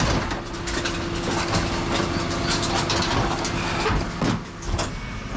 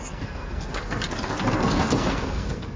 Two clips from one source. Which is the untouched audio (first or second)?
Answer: first